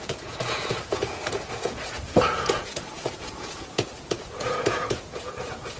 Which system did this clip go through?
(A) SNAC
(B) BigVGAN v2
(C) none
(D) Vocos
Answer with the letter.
D